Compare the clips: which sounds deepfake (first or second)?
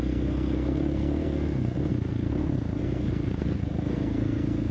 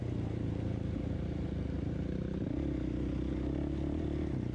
first